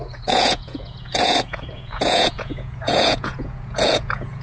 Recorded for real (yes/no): no